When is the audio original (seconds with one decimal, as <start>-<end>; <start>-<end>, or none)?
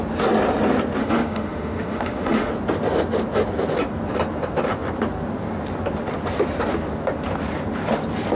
0.0-1.0; 2.5-8.3